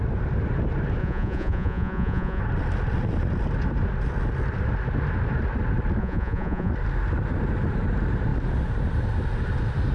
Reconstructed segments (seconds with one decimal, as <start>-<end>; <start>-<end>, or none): 1.0-2.4; 6.0-6.7